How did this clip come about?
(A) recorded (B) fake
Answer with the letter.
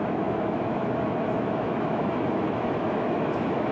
B